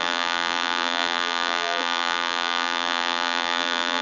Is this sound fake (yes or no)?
yes